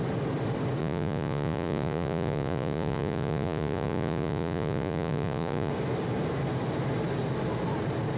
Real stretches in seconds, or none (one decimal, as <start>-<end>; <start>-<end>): 0.0-0.8; 5.7-8.2